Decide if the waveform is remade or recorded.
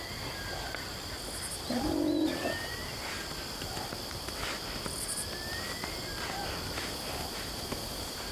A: remade